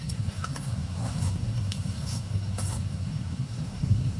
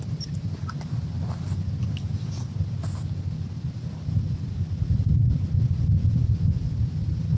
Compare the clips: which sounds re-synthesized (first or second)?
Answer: first